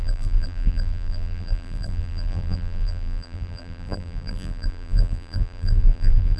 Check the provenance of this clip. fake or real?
fake